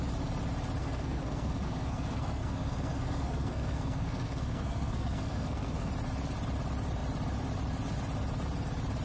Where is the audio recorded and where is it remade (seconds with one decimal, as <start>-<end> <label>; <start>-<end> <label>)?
0.0-0.8 recorded; 0.8-5.9 remade; 5.9-9.0 recorded